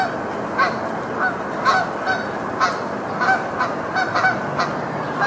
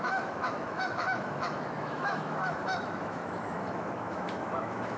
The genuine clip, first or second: first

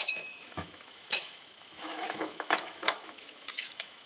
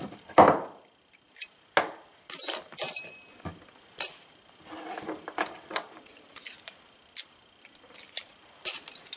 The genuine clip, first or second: second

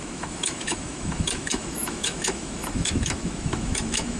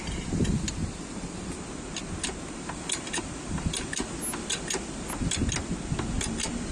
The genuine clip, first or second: second